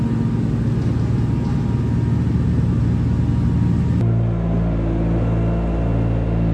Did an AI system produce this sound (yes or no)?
no